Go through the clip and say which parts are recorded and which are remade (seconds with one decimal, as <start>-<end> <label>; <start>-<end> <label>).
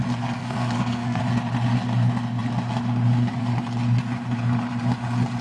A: 0.0-0.4 recorded; 0.4-1.2 remade; 1.2-5.4 recorded